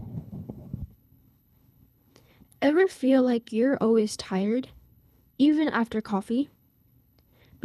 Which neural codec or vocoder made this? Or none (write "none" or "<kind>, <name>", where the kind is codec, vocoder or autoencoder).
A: codec, HILCodec